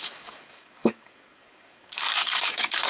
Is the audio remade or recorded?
remade